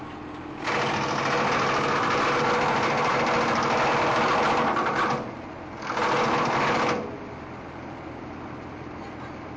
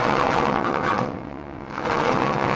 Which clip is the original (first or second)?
first